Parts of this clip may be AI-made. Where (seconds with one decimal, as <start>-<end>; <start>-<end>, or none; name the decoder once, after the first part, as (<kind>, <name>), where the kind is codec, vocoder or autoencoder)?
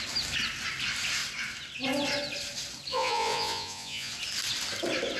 2.9-4.1 (vocoder, Vocos)